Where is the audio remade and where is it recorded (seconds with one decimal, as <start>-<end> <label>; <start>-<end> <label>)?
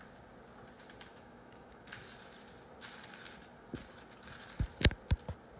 0.0-1.1 recorded; 1.1-1.8 remade; 1.8-5.6 recorded